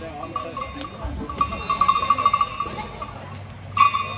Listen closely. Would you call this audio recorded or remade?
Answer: recorded